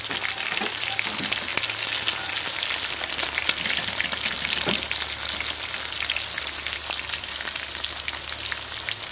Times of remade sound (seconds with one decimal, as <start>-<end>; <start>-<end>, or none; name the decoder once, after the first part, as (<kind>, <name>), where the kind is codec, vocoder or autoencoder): none